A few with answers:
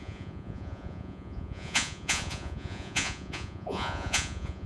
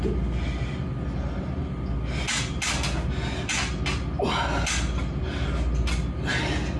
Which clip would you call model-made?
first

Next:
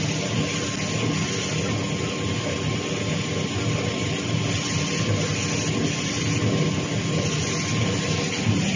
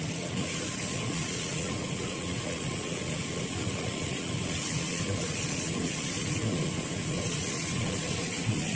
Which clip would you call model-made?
second